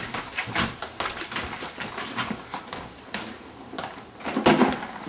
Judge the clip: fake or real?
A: real